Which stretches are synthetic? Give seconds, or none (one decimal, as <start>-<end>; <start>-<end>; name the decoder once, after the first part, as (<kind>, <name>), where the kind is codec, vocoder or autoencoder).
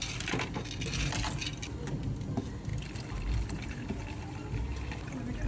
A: none